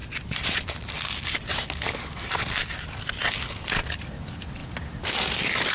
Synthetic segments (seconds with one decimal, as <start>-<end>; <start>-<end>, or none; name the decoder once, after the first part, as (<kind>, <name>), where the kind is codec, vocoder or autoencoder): none